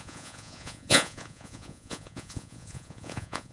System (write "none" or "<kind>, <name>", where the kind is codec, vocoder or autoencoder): vocoder, Vocos